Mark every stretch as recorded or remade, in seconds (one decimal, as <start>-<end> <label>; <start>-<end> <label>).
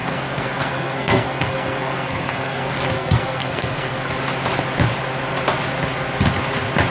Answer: 0.0-4.1 remade; 4.1-6.9 recorded